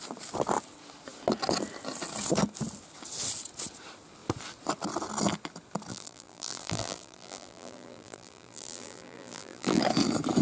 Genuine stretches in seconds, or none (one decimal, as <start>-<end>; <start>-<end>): 0.0-5.9; 9.8-10.4